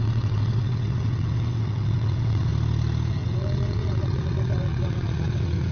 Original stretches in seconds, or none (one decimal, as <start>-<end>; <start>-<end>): 2.5-3.1